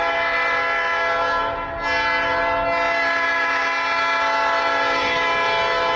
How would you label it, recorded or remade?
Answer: recorded